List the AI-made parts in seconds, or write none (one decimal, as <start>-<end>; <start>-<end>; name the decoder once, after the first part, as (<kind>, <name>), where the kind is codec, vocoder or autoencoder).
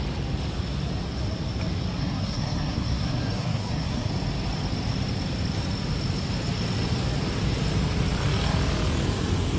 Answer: 2.0-4.1 (codec, SNAC)